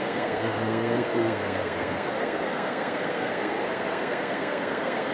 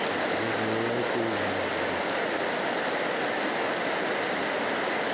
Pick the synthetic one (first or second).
first